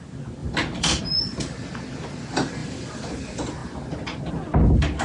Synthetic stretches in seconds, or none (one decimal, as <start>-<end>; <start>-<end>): 0.4-1.0; 2.6-3.2